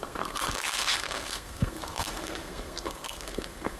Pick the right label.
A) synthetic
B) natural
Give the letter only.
A